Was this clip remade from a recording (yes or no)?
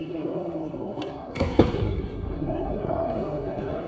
yes